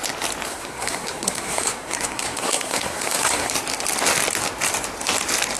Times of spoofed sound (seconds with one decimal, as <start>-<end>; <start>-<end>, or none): 0.5-3.5